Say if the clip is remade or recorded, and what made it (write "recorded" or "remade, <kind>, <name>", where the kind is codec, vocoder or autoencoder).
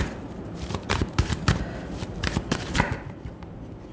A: remade, vocoder, BigVGAN v2